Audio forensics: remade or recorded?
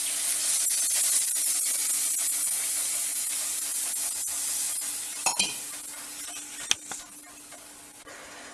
recorded